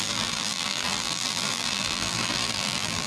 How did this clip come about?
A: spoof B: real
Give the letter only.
A